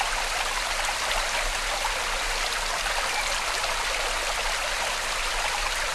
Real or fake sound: real